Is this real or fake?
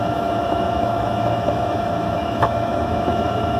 fake